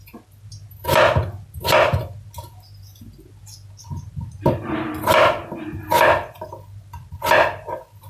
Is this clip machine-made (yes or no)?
no